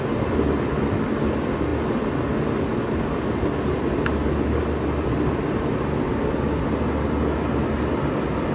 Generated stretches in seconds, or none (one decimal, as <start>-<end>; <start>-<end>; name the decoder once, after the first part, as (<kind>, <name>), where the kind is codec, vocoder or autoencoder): none